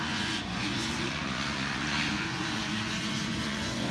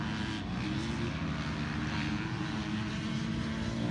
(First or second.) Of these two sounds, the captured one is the second